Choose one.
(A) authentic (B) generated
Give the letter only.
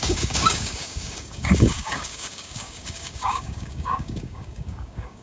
B